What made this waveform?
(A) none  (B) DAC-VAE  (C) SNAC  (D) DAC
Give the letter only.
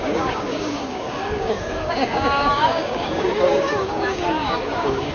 D